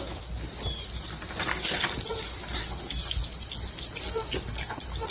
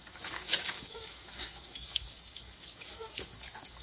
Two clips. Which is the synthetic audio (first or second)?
second